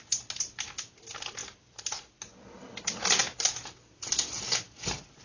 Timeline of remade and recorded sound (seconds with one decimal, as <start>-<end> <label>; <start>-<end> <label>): 0.0-5.2 recorded

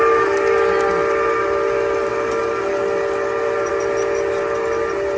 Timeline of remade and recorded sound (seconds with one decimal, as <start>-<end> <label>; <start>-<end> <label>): 0.0-5.2 recorded